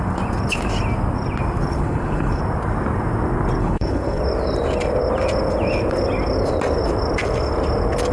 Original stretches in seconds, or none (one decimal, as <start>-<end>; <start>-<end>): 0.0-1.7; 2.4-3.6; 4.2-8.1